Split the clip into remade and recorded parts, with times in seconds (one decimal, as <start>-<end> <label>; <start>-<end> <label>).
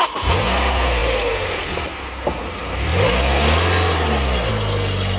0.0-5.2 recorded